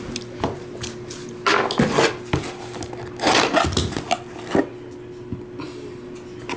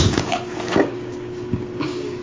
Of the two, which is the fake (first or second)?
second